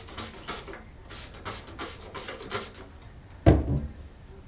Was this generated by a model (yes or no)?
no